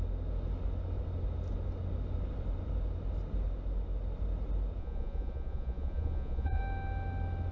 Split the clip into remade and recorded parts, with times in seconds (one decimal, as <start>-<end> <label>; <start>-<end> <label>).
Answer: 0.0-4.8 recorded; 4.8-6.6 remade; 6.6-7.5 recorded